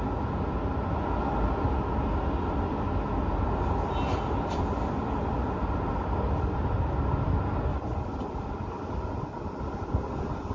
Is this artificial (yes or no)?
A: no